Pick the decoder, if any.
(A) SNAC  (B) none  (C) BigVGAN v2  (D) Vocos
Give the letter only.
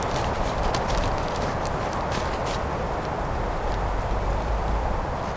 C